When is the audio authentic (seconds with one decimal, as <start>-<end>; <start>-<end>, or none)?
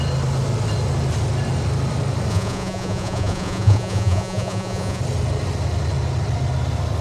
0.0-2.3; 5.0-7.0